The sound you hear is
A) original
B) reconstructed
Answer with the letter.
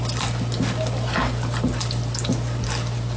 A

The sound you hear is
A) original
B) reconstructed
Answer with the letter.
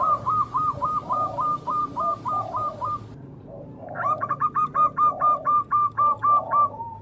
B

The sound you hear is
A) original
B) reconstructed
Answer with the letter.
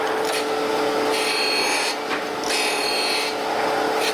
A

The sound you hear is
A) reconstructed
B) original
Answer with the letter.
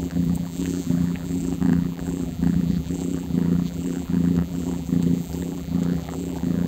A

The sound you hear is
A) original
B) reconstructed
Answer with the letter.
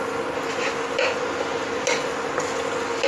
A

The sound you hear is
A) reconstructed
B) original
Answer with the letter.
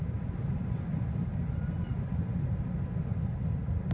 A